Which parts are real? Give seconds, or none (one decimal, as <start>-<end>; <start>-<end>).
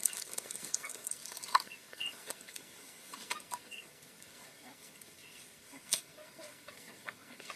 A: none